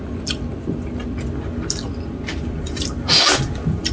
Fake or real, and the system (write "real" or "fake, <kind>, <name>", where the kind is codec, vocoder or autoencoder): real